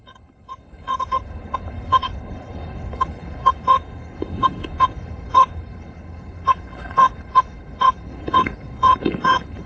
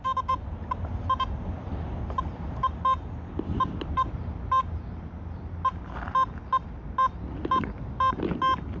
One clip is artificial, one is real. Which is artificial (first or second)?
first